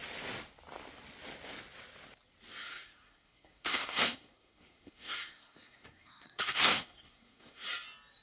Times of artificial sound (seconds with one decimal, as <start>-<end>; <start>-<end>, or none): 2.7-7.6